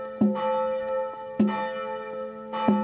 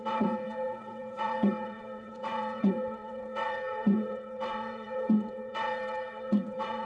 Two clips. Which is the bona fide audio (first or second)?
first